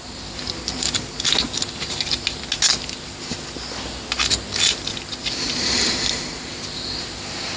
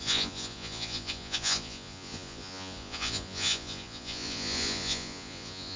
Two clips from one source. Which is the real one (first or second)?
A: first